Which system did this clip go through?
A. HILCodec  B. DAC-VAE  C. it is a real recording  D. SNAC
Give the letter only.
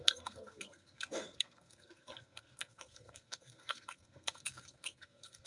D